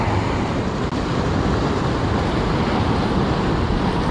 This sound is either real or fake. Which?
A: real